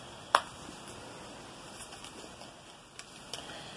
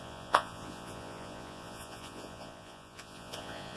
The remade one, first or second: second